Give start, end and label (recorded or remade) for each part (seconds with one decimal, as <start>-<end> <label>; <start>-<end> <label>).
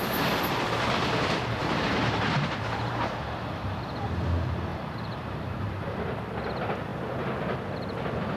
0.0-1.6 recorded; 1.6-3.1 remade; 3.1-4.7 recorded; 4.7-6.3 remade; 6.3-8.4 recorded